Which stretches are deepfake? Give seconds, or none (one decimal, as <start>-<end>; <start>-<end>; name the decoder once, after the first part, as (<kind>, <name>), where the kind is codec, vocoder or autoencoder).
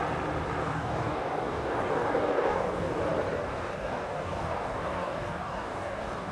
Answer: 0.6-3.0 (codec, DAC); 3.4-6.3